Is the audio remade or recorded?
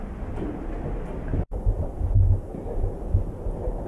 recorded